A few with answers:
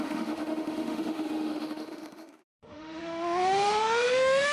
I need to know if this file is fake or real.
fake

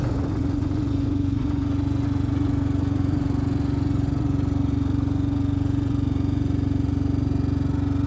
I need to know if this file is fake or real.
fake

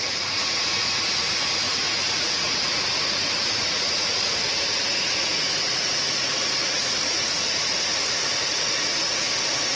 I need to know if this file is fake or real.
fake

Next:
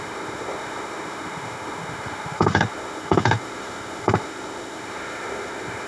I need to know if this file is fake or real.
fake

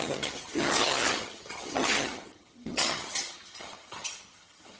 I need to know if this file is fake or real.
fake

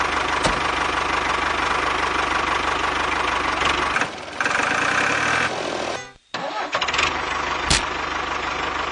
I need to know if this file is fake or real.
real